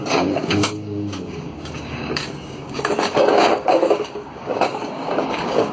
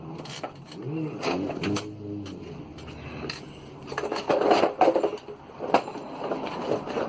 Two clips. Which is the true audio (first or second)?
second